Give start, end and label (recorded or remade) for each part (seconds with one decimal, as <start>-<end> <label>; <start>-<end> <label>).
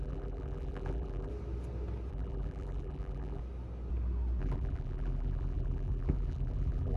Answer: 0.0-1.3 remade; 1.3-2.1 recorded; 2.1-3.4 remade; 3.4-4.4 recorded; 4.4-7.0 remade